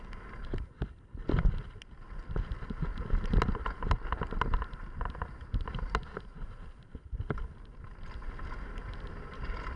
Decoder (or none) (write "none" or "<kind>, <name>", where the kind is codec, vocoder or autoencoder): none